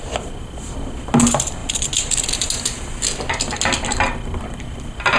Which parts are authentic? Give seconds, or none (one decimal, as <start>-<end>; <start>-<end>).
0.0-5.2